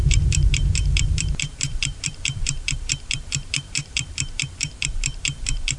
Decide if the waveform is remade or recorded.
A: remade